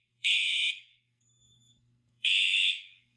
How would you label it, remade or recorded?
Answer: remade